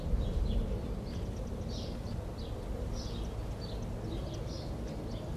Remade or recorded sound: recorded